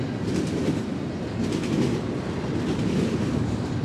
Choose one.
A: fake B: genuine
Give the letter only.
B